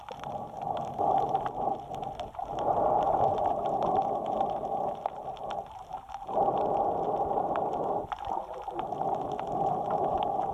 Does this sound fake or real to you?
real